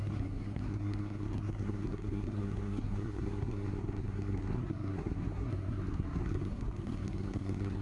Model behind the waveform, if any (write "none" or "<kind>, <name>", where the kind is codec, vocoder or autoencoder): codec, SNAC